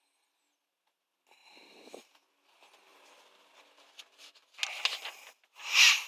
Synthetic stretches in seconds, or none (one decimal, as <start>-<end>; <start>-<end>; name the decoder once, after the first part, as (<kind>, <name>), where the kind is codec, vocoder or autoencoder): 1.4-2.1 (vocoder, BigVGAN v2)